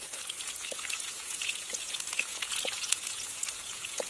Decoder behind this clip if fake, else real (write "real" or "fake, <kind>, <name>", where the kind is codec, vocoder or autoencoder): fake, vocoder, Vocos